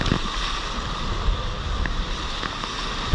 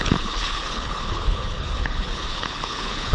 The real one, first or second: first